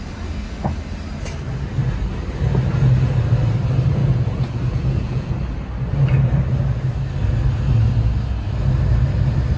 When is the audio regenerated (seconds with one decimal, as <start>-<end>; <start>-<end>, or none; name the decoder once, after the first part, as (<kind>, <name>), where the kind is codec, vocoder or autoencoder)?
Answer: 4.0-5.3 (vocoder, Vocos)